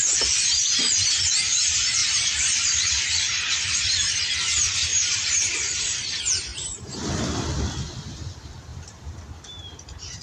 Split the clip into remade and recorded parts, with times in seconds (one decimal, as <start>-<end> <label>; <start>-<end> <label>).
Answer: 0.0-2.0 recorded; 2.0-4.2 remade; 4.2-4.9 recorded; 4.9-5.8 remade; 5.8-6.5 recorded; 6.5-7.1 remade; 7.1-8.7 recorded; 8.7-9.2 remade; 9.2-10.2 recorded

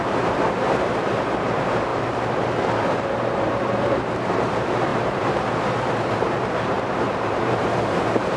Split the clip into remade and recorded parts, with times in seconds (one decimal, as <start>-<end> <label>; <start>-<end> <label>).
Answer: 0.0-8.4 remade

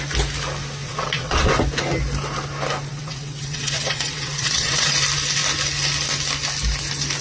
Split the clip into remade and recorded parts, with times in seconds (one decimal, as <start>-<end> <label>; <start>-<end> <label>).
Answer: 0.0-0.8 recorded; 0.8-1.5 remade; 1.5-2.9 recorded; 2.9-4.9 remade; 4.9-7.2 recorded